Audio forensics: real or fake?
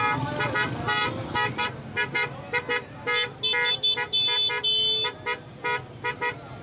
real